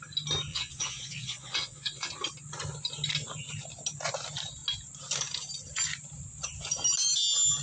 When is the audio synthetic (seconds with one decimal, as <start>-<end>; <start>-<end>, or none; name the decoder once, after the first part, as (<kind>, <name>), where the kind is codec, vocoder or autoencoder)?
0.5-2.1 (vocoder, Vocos)